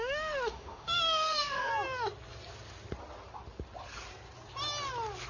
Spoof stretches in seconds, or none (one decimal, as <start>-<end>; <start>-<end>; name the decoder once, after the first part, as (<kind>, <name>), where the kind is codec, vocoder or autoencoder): 0.0-1.7 (autoencoder, DAC-VAE)